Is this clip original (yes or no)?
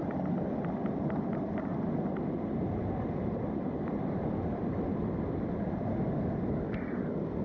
yes